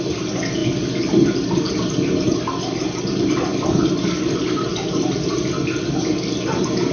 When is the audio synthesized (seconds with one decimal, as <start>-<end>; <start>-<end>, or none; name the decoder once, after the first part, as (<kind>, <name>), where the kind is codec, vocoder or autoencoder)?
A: none